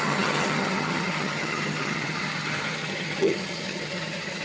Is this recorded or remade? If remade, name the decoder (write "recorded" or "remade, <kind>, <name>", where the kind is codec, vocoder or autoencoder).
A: remade, vocoder, HiFi-GAN